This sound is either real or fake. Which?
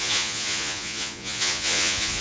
fake